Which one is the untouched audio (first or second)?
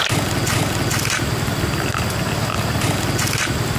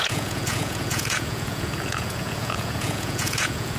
first